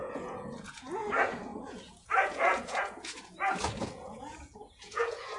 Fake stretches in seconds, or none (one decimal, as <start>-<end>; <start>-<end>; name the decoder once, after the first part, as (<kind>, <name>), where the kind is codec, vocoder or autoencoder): 0.0-5.4 (vocoder, Vocos)